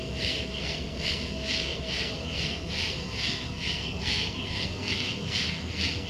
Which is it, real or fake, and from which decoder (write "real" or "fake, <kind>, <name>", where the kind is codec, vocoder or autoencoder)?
fake, codec, SNAC